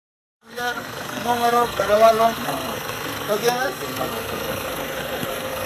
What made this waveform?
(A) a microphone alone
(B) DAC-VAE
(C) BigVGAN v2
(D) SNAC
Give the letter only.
D